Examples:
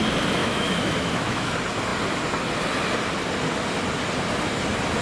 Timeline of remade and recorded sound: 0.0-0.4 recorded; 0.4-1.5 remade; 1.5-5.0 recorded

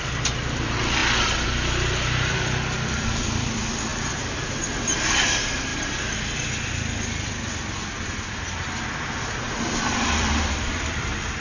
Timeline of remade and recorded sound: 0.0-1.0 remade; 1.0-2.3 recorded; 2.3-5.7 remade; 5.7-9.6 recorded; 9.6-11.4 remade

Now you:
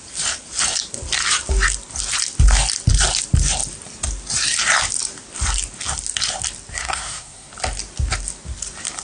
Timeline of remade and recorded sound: 0.0-6.8 recorded; 6.8-7.5 remade; 7.5-9.0 recorded